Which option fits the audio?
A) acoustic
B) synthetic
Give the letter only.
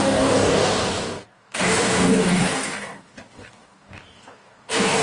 B